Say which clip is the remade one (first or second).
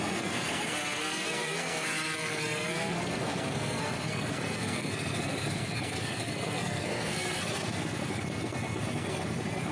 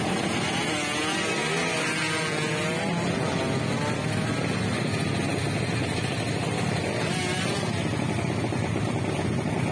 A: first